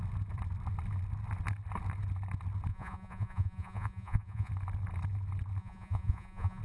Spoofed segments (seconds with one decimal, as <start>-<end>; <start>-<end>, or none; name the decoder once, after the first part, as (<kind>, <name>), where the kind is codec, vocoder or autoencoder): 2.7-4.5 (vocoder, Vocos); 5.6-6.6